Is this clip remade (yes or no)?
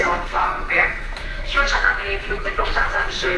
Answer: yes